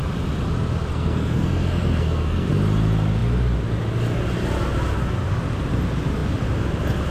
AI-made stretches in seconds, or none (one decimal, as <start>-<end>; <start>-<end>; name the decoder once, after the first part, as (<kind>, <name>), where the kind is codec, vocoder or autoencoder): 0.9-2.5 (codec, SNAC)